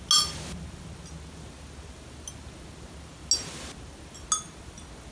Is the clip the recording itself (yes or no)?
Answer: yes